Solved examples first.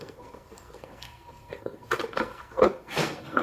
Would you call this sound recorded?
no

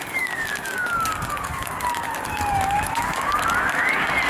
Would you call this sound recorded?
no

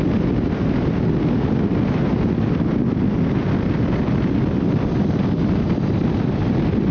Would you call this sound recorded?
yes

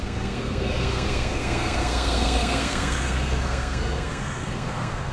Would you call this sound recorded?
no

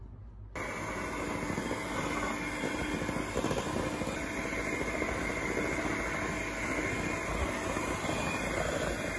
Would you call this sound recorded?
yes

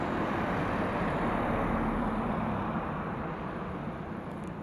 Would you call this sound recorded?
no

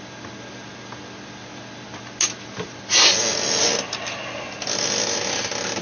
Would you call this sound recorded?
yes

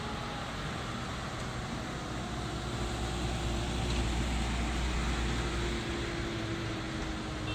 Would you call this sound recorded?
yes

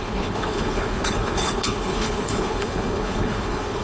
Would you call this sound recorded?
no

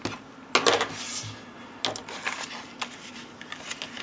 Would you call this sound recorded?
yes